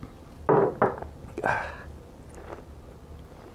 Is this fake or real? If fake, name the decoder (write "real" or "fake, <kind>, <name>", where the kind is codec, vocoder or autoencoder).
real